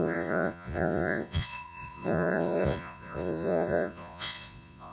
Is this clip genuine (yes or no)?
no